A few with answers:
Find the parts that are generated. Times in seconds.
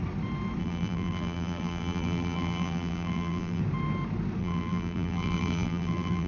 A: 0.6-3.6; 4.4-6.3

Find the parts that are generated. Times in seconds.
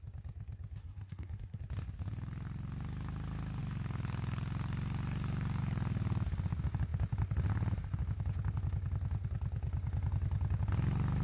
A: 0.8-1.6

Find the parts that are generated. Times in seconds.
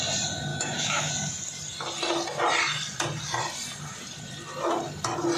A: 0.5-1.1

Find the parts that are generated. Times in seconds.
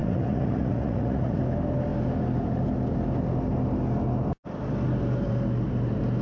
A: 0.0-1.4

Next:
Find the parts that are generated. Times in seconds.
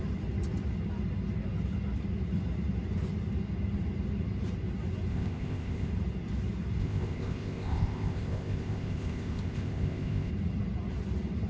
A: 5.1-5.9; 6.8-10.3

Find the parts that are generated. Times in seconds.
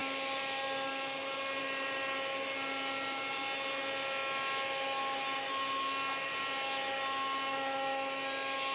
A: none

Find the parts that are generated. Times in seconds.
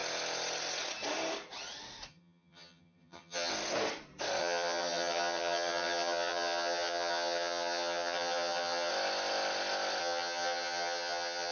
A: 2.1-3.5; 4.4-8.9; 10.0-11.5